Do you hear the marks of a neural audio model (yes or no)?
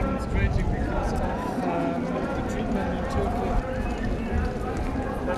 no